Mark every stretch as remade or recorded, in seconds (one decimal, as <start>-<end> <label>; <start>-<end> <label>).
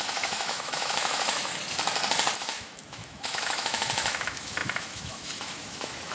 0.0-1.5 remade; 1.5-2.4 recorded; 2.4-6.1 remade